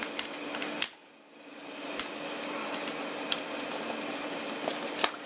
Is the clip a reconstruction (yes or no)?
no